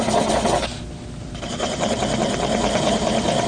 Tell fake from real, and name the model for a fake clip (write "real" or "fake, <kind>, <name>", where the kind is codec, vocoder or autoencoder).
real